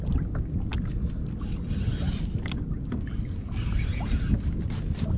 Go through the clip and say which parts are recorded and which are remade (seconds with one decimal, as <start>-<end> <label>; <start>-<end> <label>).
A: 0.0-5.2 recorded